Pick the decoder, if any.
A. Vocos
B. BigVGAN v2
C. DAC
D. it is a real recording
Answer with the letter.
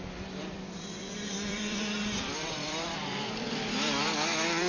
B